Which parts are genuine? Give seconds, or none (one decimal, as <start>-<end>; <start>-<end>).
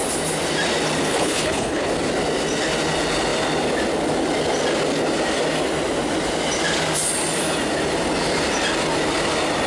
0.0-1.1; 1.9-9.7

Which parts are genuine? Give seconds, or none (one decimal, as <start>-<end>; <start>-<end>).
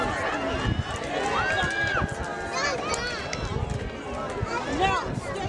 0.0-5.5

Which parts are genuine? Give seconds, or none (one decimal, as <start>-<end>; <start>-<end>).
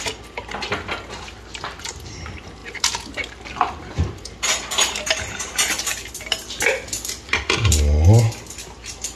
0.0-9.1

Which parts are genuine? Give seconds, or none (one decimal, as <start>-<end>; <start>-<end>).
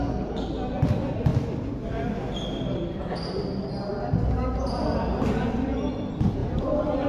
0.0-6.4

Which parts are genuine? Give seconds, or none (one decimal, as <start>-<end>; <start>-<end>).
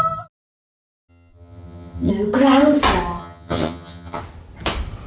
0.0-1.1; 2.1-3.2; 4.2-5.1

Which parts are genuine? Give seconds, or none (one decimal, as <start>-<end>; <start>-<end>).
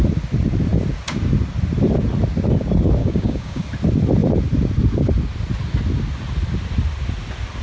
0.0-3.0; 3.6-7.6